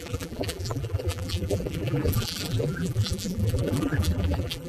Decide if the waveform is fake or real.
fake